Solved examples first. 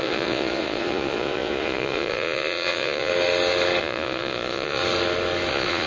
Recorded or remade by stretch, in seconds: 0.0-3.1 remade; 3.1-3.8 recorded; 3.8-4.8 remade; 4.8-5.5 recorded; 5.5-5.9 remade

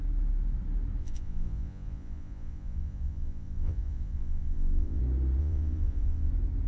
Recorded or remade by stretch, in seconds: 0.0-1.0 recorded; 1.0-5.0 remade; 5.0-5.4 recorded; 5.4-6.3 remade; 6.3-6.7 recorded

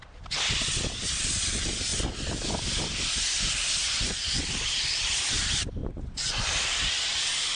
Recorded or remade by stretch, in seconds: 0.0-3.8 recorded; 3.8-4.4 remade; 4.4-5.8 recorded; 5.8-6.5 remade; 6.5-7.6 recorded

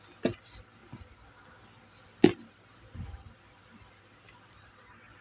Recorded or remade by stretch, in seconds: 0.0-5.2 recorded

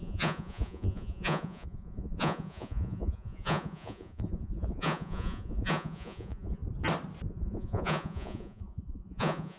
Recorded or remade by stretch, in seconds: 0.0-6.6 remade; 6.6-7.3 recorded; 7.3-9.6 remade

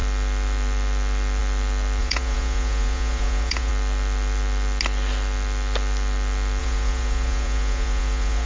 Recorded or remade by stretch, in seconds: 0.0-2.0 recorded; 2.0-3.7 remade; 3.7-6.6 recorded; 6.6-8.5 remade